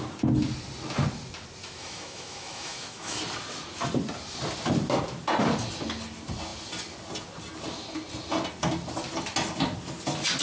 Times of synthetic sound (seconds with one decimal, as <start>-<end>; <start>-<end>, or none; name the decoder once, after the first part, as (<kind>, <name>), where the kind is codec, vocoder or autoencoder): 1.6-3.2 (autoencoder, DAC-VAE)